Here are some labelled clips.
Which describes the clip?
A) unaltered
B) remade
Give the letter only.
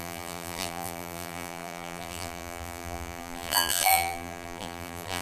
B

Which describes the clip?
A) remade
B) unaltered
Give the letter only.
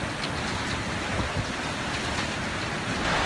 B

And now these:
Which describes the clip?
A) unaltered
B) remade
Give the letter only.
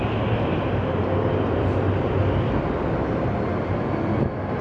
A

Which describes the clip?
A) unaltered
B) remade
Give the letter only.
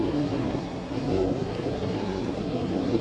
B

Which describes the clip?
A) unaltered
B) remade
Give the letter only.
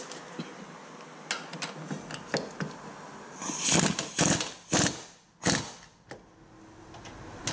A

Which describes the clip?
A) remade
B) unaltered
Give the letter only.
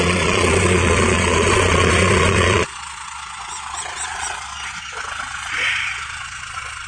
A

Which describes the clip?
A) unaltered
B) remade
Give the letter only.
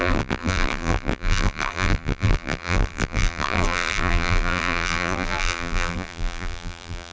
B